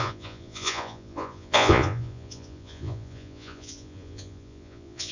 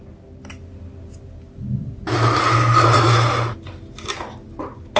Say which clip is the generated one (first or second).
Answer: first